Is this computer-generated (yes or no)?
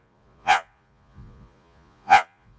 yes